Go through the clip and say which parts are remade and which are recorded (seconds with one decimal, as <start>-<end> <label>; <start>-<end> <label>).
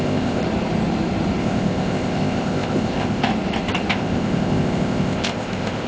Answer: 0.0-0.4 remade; 0.4-1.4 recorded; 1.4-3.3 remade; 3.3-3.9 recorded; 3.9-5.9 remade